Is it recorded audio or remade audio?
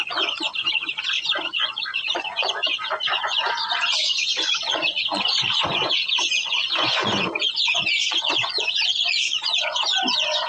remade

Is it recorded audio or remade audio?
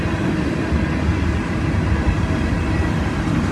recorded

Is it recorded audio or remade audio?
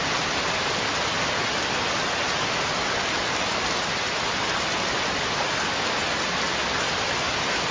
recorded